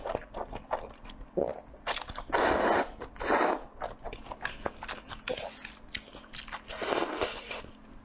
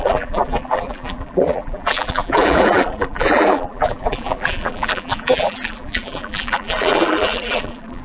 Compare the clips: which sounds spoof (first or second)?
second